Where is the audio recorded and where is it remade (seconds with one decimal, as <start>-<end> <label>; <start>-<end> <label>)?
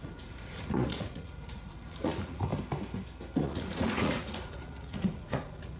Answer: 0.0-2.5 remade; 2.5-3.4 recorded; 3.4-5.8 remade